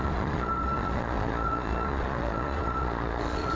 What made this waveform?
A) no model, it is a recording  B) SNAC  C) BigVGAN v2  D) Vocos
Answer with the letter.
D